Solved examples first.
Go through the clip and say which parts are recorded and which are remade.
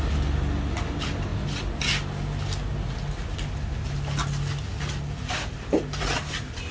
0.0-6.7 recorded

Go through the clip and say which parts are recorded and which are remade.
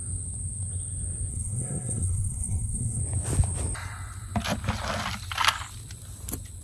0.0-1.3 recorded; 1.3-3.0 remade; 3.0-6.6 recorded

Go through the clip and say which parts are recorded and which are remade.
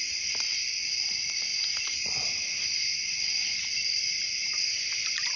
0.0-1.5 remade; 1.5-4.5 recorded; 4.5-5.4 remade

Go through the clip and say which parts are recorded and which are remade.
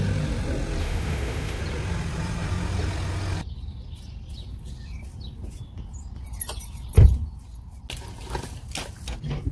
0.0-0.8 recorded; 0.8-1.6 remade; 1.6-9.5 recorded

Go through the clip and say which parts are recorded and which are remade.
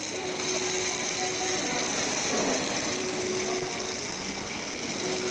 0.0-5.3 recorded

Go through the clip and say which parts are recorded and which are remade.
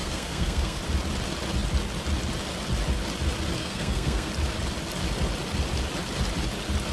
0.0-0.8 remade; 0.8-3.6 recorded; 3.6-4.3 remade; 4.3-6.9 recorded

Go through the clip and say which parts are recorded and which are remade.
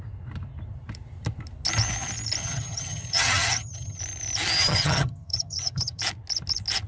0.0-2.4 recorded; 2.4-4.0 remade; 4.0-4.6 recorded; 4.6-6.0 remade; 6.0-6.9 recorded